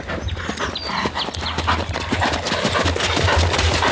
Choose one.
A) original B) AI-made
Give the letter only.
A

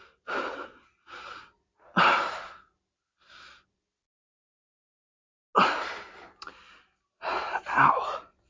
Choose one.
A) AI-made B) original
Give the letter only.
B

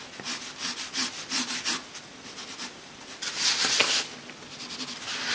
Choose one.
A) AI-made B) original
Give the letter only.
B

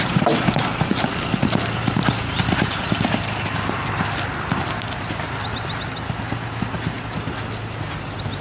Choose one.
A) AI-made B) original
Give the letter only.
B